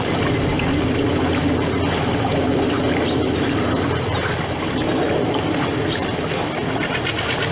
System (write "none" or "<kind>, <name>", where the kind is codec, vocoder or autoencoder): none